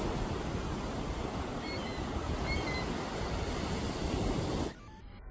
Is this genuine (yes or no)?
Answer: yes